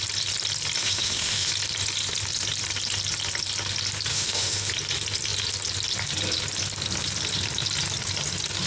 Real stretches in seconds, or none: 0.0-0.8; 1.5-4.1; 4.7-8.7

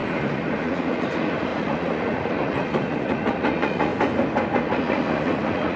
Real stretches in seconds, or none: 3.9-4.6

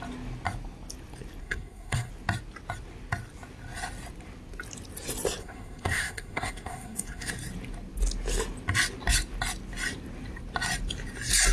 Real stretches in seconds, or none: 0.0-1.4; 2.1-5.4; 7.3-11.5

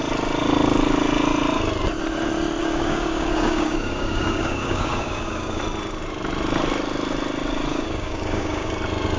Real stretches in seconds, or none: 0.0-2.6; 5.6-7.7; 8.7-9.2

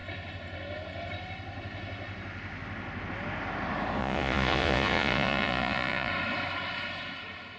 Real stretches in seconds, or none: 0.0-4.0; 6.1-7.6